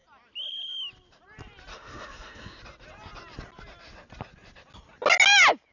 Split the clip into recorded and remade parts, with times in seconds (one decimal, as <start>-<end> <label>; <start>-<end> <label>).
0.0-1.7 recorded; 1.7-2.6 remade; 2.6-5.7 recorded